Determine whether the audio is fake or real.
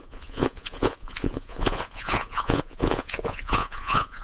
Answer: fake